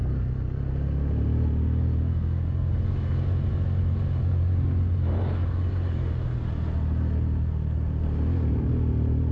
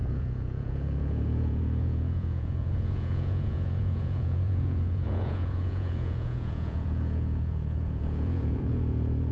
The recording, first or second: first